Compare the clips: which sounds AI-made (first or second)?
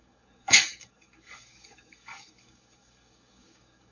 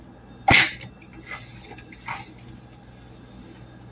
first